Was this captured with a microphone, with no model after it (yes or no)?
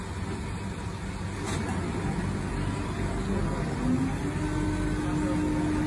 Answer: yes